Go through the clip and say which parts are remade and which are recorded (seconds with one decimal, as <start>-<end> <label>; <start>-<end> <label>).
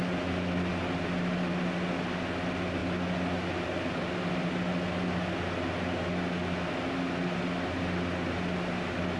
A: 0.0-9.2 recorded